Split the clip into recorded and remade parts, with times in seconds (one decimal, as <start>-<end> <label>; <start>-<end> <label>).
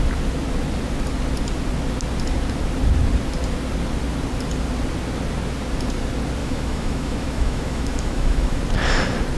0.0-6.4 recorded; 6.4-8.6 remade; 8.6-9.4 recorded